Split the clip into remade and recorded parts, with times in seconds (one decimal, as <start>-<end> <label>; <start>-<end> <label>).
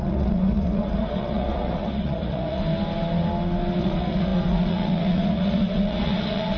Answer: 0.0-2.6 remade; 2.6-3.8 recorded; 3.8-6.6 remade